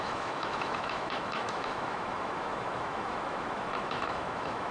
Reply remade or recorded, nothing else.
remade